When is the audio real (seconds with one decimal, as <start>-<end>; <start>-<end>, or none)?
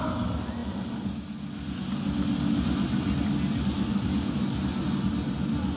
0.0-5.8